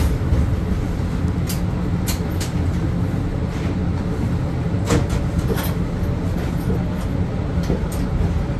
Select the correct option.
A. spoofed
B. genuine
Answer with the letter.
B